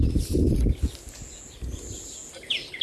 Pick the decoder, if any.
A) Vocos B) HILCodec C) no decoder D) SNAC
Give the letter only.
C